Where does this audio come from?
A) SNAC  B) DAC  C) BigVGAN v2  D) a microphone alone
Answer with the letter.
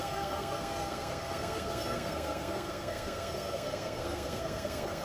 A